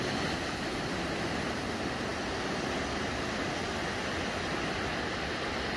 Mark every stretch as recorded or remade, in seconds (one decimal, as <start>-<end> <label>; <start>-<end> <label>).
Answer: 0.0-5.8 recorded